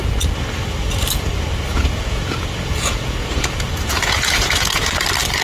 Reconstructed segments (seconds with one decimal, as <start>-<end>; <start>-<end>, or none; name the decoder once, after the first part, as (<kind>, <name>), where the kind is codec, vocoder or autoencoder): 1.7-4.9 (vocoder, Vocos)